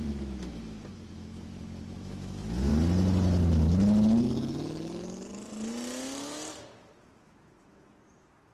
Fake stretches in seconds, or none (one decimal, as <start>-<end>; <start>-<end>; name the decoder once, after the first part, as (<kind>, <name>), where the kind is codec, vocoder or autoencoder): 0.0-2.7 (autoencoder, DAC-VAE); 6.7-8.5